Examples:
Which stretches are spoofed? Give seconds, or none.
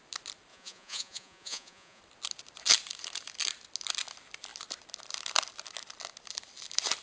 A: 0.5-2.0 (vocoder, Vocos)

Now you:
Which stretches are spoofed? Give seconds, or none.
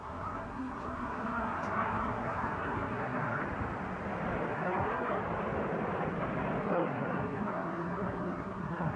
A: 0.0-3.4 (codec, SNAC); 4.5-5.2; 6.6-9.0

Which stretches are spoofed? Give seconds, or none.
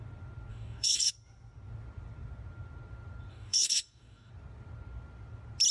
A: 0.5-1.1 (codec, DAC); 3.3-4.3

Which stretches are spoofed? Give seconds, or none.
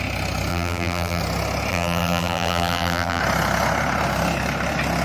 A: 0.5-1.2 (vocoder, BigVGAN v2); 1.7-3.2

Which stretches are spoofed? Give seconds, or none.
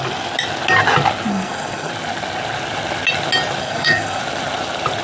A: 1.3-1.9 (codec, SNAC); 3.6-4.2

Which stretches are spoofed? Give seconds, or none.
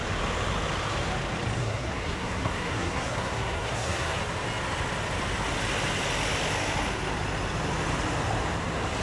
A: 1.6-4.2 (codec, SNAC)